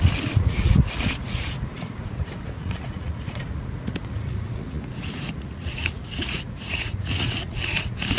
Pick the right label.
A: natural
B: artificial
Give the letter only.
B